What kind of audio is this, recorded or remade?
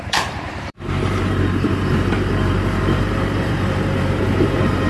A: remade